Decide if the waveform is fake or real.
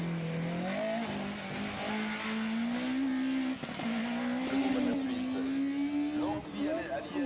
real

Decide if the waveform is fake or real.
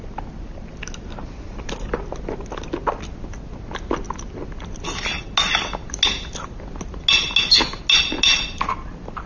real